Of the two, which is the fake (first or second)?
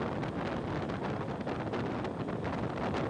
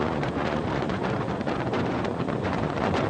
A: second